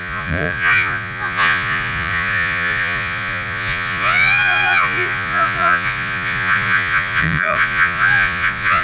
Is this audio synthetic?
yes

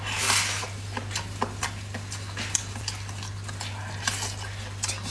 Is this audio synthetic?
no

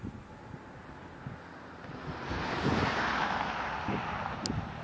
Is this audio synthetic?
no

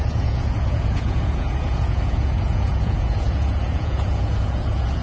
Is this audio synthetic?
yes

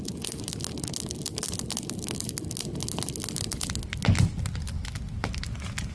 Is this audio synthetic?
no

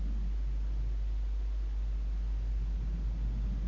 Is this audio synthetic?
no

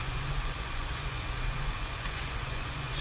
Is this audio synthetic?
yes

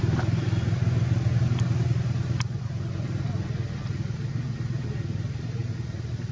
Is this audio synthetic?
no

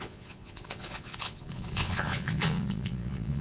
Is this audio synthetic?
yes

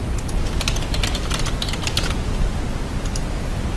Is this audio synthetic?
no